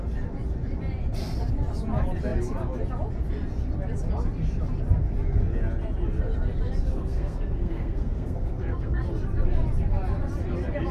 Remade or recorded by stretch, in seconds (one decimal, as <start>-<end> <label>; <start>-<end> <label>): 0.0-6.9 recorded; 6.9-9.0 remade; 9.0-10.9 recorded